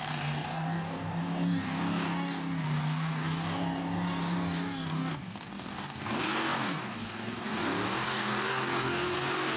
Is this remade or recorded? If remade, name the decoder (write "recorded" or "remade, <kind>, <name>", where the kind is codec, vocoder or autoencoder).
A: remade, codec, DAC